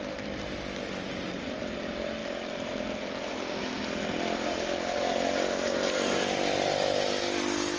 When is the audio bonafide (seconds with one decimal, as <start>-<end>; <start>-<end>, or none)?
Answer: 0.0-7.8